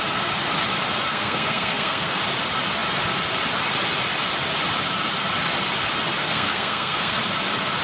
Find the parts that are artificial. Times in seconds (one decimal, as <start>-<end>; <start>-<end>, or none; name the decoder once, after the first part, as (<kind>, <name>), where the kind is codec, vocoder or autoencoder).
1.1-2.2 (codec, SNAC); 6.2-7.2